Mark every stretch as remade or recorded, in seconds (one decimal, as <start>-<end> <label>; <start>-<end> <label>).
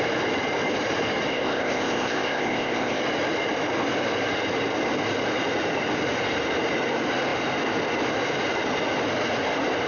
0.0-1.3 recorded; 1.3-3.0 remade; 3.0-9.9 recorded